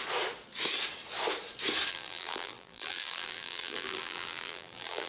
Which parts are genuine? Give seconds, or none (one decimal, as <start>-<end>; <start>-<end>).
0.0-1.9